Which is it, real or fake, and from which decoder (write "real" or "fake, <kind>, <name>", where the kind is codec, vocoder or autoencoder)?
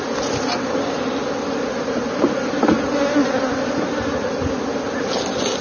real